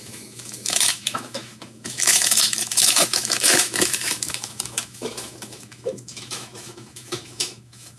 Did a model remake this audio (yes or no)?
yes